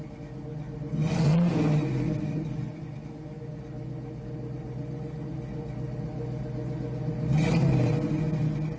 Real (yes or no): yes